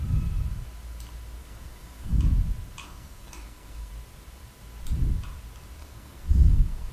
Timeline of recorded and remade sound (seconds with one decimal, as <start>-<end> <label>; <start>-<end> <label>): 0.0-1.4 recorded; 1.4-2.2 remade; 2.2-2.8 recorded; 2.8-3.9 remade; 3.9-5.8 recorded; 5.8-6.9 remade